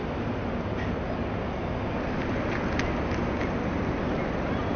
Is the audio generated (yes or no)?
no